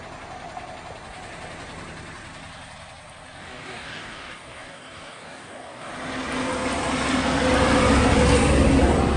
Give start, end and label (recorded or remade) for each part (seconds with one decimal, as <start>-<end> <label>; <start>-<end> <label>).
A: 0.0-3.4 recorded; 3.4-5.9 remade; 5.9-9.2 recorded